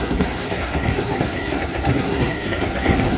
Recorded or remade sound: remade